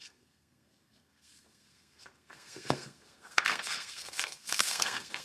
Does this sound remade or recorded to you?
remade